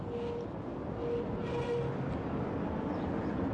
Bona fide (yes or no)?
yes